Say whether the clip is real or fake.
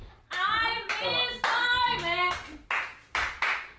real